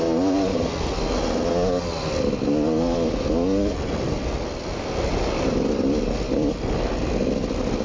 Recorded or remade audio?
recorded